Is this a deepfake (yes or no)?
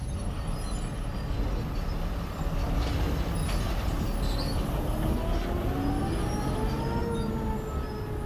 no